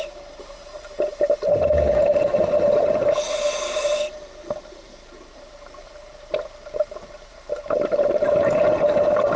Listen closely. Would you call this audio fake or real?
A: fake